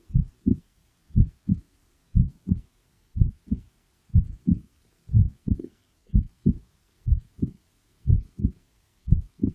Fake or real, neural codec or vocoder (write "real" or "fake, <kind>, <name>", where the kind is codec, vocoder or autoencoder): fake, codec, SNAC